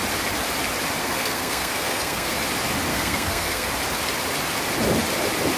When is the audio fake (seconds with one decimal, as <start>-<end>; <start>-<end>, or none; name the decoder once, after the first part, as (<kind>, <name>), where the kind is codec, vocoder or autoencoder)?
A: 1.0-2.3 (codec, SNAC); 2.9-3.7